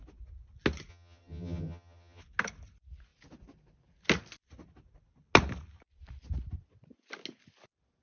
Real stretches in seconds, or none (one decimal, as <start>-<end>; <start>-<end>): 0.0-0.9; 2.2-8.0